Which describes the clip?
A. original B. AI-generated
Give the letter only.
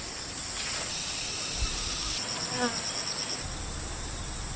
A